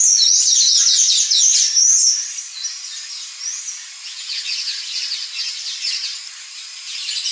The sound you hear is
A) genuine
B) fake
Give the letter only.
A